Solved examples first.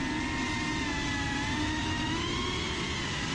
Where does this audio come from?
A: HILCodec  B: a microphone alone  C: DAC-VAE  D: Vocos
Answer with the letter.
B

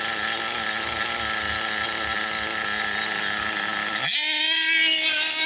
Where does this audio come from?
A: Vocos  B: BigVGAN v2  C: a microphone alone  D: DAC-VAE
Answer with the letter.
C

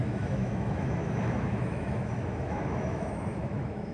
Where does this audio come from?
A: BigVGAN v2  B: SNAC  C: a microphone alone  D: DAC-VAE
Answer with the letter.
D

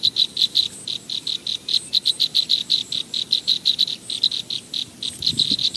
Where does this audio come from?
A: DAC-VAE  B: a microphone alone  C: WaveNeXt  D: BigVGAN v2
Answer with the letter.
B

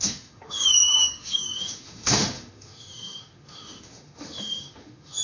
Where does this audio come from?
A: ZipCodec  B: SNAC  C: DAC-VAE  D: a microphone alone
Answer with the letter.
C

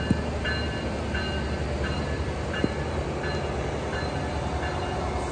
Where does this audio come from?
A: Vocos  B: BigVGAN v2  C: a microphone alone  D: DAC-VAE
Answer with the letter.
C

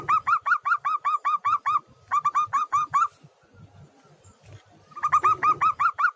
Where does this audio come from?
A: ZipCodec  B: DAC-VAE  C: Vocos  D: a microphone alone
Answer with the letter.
D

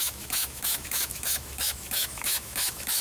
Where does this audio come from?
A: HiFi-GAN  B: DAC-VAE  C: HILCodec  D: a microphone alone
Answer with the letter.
B